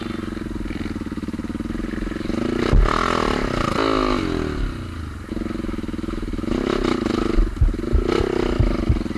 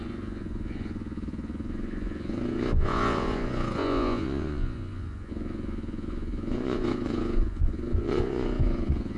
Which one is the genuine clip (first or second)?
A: first